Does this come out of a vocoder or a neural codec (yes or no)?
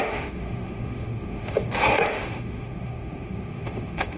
yes